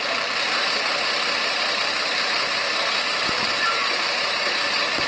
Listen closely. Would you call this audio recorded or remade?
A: recorded